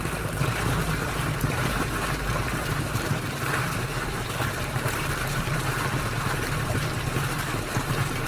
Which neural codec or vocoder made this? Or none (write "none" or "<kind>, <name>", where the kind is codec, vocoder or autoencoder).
vocoder, BigVGAN v2